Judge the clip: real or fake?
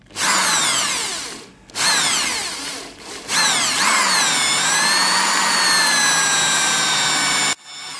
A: real